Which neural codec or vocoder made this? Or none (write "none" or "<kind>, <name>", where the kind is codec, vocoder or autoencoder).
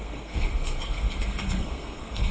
codec, SNAC